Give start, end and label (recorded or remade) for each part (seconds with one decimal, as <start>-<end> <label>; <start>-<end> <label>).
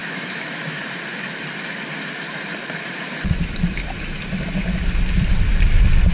0.0-0.8 remade; 0.8-6.1 recorded